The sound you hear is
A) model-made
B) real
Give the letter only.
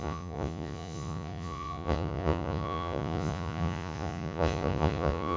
A